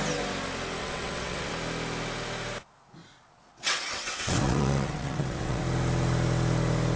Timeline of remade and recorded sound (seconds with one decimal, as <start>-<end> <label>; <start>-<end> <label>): 0.0-0.8 recorded; 0.8-1.5 remade; 1.5-3.0 recorded; 3.0-5.6 remade; 5.6-7.0 recorded